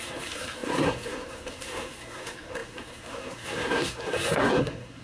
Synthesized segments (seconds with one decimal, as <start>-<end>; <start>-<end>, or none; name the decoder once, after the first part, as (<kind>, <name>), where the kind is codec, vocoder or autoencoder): 0.0-5.0 (codec, SNAC)